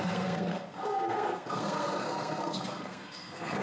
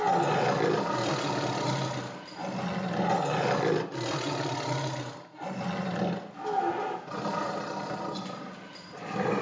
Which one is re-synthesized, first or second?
first